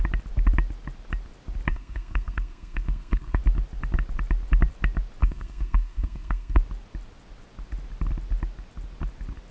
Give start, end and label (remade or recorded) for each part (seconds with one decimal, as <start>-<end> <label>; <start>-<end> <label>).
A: 0.0-1.7 recorded; 1.7-3.4 remade; 3.4-5.2 recorded; 5.2-6.6 remade; 6.6-9.5 recorded